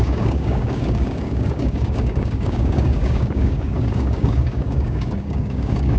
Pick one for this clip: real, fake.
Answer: fake